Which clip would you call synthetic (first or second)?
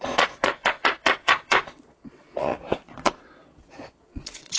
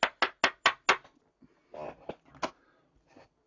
first